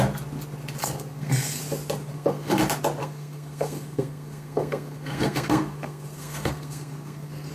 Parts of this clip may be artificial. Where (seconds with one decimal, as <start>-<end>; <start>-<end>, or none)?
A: 0.8-1.6; 2.1-2.6; 3.0-7.5